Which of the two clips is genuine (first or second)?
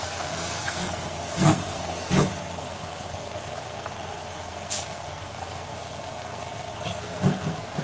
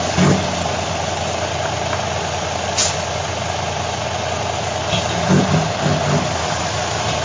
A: second